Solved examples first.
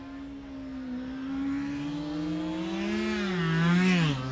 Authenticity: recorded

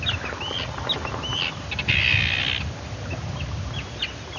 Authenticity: recorded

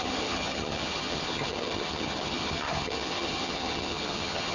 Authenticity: remade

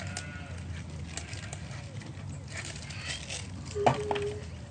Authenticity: recorded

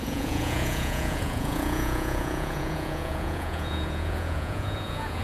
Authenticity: remade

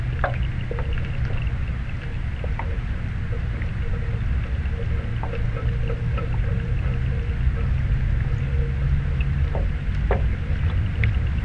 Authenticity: recorded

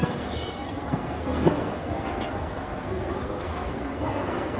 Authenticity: remade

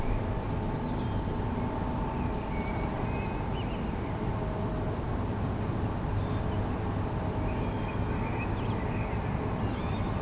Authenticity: recorded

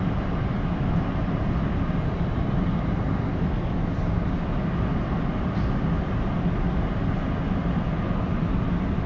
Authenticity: recorded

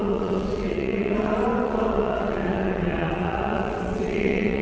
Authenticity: remade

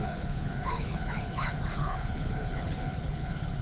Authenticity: remade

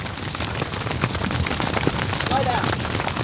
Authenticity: recorded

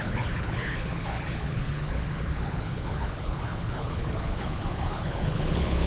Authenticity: remade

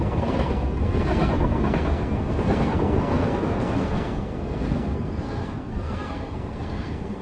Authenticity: remade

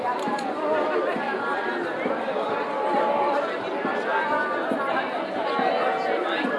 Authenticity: recorded